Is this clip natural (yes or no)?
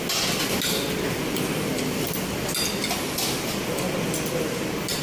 yes